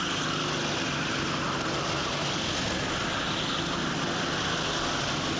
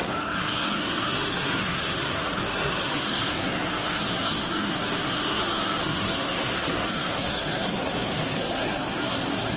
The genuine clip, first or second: first